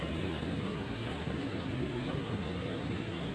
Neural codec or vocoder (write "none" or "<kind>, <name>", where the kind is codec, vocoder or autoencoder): codec, SNAC